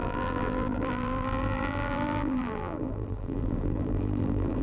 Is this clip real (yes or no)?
no